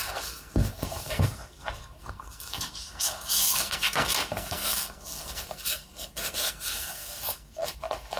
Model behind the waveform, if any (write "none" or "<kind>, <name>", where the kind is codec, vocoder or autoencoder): codec, SNAC